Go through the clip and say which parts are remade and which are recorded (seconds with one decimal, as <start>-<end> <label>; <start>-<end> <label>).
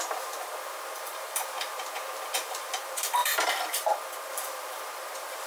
0.0-5.5 remade